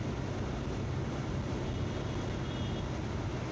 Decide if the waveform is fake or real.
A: real